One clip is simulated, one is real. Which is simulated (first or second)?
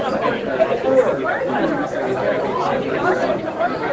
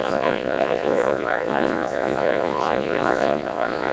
second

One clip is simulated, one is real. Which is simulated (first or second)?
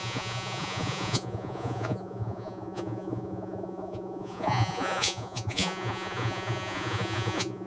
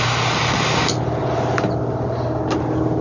first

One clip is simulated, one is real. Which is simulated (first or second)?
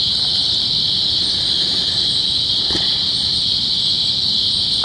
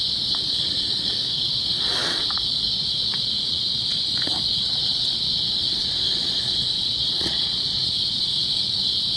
second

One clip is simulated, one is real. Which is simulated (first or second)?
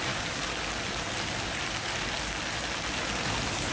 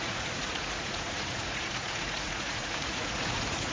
second